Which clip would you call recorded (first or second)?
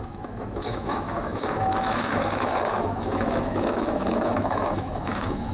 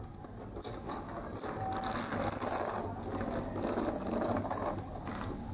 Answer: second